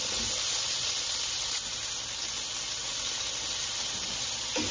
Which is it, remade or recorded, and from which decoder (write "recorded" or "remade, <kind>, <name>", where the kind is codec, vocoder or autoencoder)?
recorded